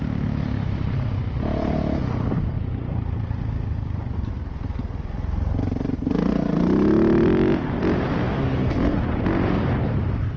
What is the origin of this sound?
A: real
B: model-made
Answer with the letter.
A